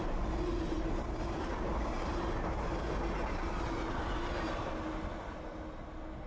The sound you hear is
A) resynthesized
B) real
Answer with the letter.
B